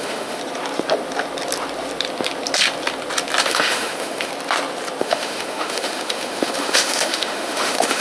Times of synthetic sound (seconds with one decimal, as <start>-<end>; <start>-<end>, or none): 0.0-0.4; 3.4-4.3; 5.0-8.0